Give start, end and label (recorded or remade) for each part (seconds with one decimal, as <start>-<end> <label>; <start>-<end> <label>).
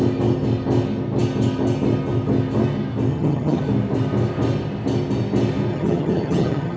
0.0-3.1 recorded; 3.1-3.6 remade; 3.6-5.7 recorded; 5.7-6.8 remade